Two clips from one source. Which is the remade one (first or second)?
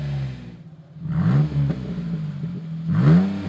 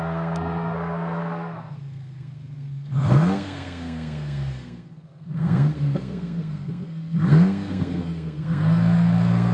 second